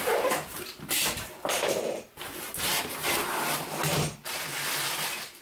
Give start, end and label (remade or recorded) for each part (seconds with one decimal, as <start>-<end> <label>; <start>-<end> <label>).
0.0-0.5 recorded; 0.5-3.2 remade; 3.2-5.4 recorded